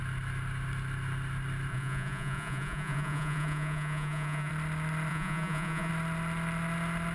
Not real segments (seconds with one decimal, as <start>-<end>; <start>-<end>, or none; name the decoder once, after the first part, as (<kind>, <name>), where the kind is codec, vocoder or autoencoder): 1.7-4.5 (vocoder, Vocos); 5.1-5.9

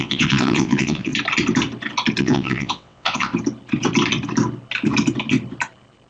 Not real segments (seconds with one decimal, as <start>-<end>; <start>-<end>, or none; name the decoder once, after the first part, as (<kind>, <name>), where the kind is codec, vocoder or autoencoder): 0.0-1.1 (vocoder, WaveNeXt); 2.2-3.3

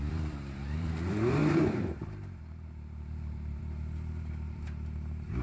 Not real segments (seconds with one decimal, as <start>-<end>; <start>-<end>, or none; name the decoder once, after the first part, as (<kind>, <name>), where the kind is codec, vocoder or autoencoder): 0.0-5.4 (vocoder, BigVGAN v2)

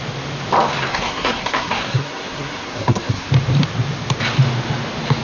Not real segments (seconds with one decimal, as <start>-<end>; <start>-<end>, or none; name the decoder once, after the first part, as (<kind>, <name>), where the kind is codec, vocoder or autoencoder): 0.9-3.3 (codec, SNAC)

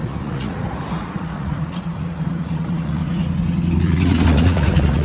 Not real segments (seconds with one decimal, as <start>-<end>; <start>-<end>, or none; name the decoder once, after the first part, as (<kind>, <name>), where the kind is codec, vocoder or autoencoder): 0.0-3.0 (vocoder, Vocos); 3.8-5.0